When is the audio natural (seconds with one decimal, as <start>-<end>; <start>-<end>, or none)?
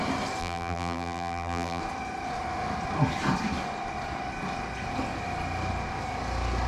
0.0-0.4; 1.8-6.7